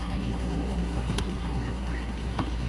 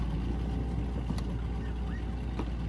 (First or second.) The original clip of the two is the second